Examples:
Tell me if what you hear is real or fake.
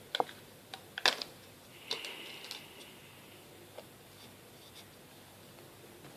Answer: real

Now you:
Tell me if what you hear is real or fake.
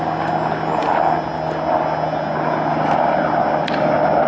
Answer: real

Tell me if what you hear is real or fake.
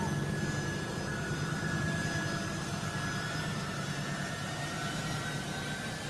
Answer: real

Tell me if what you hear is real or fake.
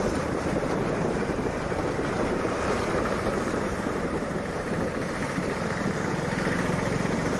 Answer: fake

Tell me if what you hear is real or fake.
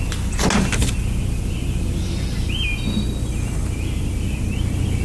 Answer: real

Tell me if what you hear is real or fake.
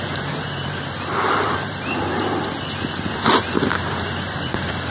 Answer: fake